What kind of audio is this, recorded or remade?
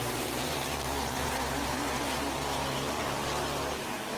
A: remade